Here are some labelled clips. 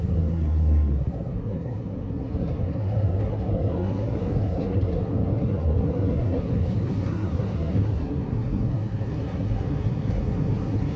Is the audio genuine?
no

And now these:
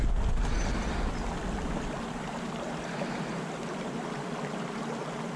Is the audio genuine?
yes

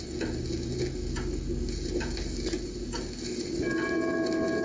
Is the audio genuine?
yes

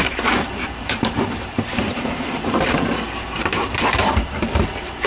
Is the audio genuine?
no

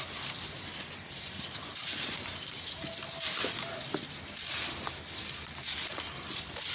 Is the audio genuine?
no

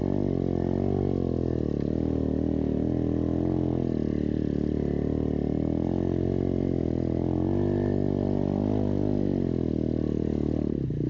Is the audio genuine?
yes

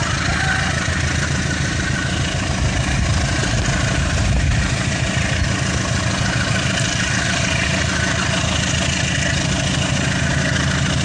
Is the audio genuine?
yes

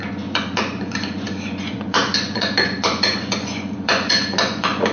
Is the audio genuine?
no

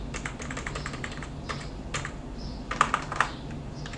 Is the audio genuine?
yes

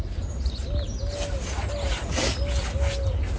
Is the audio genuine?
yes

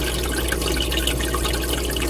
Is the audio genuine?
yes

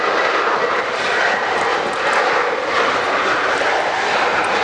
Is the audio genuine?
yes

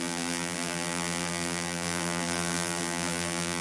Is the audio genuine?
no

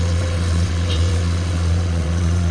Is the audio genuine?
no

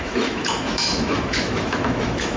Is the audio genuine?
no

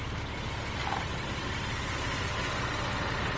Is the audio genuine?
yes